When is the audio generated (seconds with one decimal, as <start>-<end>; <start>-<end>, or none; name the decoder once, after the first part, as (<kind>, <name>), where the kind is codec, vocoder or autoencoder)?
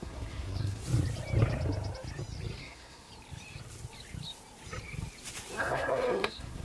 0.0-0.8 (codec, SNAC); 2.6-3.1; 5.6-6.6